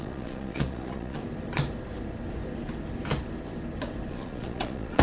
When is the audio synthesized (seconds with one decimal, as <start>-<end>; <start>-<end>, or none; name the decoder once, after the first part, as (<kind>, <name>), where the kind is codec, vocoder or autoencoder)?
0.0-1.2 (vocoder, Vocos); 4.1-5.0